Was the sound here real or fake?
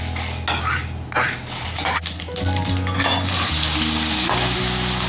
real